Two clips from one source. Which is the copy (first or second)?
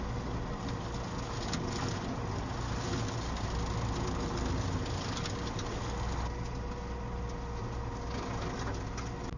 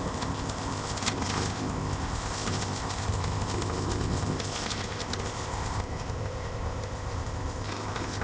second